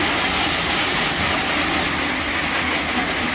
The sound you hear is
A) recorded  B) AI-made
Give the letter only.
A